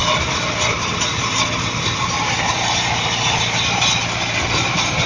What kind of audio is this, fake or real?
real